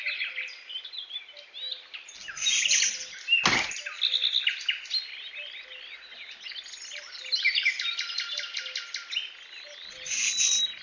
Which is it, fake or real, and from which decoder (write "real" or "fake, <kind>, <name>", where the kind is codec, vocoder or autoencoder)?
real